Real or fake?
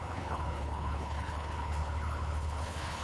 fake